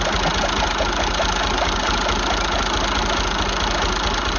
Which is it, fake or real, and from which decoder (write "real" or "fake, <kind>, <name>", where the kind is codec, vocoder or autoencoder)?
real